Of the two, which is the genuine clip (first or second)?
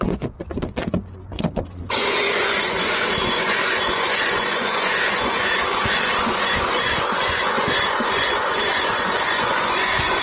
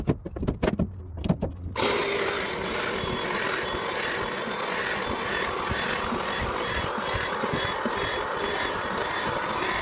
second